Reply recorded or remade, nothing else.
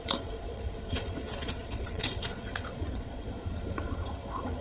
remade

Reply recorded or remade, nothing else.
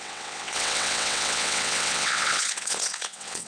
remade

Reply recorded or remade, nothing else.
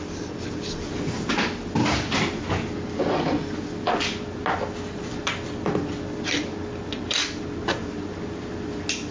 recorded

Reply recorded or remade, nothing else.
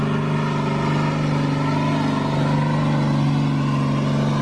recorded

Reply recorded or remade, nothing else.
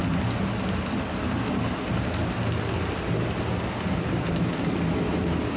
recorded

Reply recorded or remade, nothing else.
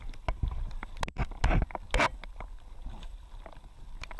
recorded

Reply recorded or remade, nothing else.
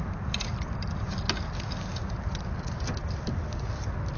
recorded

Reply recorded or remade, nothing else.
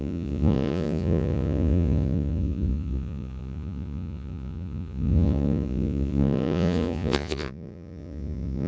remade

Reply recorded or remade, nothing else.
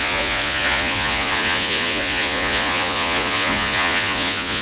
remade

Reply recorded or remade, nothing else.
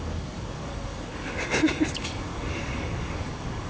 remade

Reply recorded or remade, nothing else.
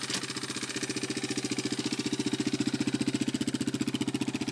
recorded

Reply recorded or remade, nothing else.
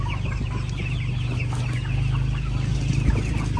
recorded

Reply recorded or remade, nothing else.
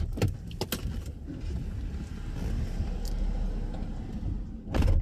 recorded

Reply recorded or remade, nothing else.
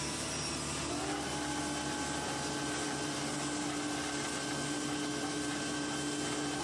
recorded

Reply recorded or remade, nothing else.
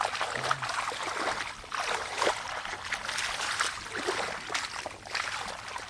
recorded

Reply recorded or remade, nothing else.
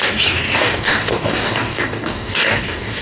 remade